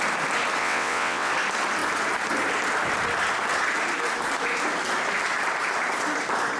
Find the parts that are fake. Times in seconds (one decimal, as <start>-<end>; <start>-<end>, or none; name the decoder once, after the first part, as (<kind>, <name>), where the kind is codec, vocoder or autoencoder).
0.6-1.3 (vocoder, WaveNeXt)